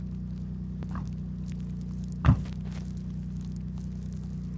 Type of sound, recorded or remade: recorded